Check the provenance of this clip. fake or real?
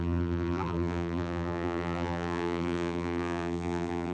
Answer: fake